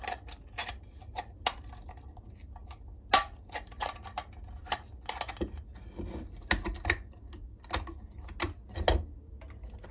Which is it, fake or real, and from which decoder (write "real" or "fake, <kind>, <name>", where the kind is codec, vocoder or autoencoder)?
real